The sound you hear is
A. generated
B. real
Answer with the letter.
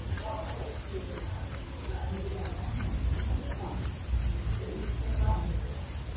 B